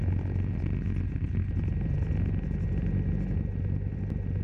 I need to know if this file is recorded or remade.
recorded